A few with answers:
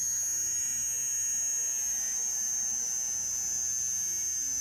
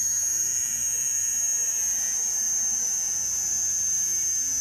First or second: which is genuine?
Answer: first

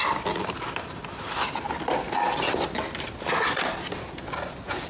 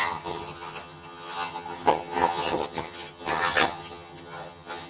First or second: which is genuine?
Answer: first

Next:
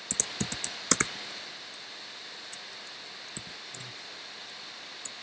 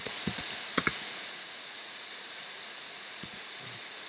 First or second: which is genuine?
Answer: first